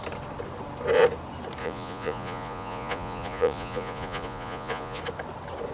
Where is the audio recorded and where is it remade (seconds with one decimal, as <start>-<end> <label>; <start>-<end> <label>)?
0.0-1.6 recorded; 1.6-5.0 remade; 5.0-5.7 recorded